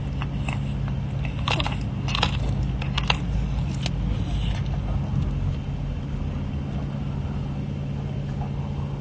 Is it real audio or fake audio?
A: real